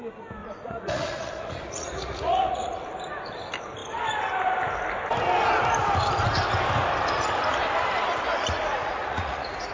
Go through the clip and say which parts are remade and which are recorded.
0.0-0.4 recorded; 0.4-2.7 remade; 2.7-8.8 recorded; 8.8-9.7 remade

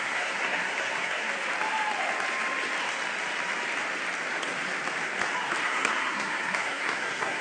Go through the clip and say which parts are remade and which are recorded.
0.0-1.3 remade; 1.3-5.6 recorded; 5.6-7.4 remade